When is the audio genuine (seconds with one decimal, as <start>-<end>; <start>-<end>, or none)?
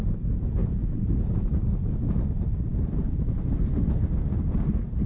0.0-0.6; 3.7-5.1